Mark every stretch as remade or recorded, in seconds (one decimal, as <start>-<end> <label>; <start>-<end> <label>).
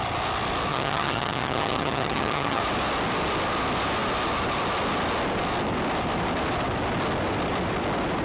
0.0-0.7 recorded; 0.7-2.6 remade; 2.6-8.2 recorded